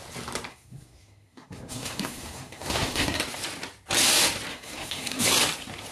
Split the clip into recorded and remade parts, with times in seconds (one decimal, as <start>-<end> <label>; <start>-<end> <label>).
0.0-0.5 recorded; 0.5-3.2 remade; 3.2-4.5 recorded; 4.5-5.3 remade; 5.3-5.9 recorded